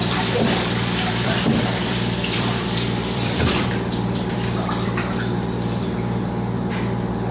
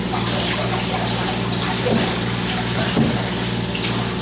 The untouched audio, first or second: second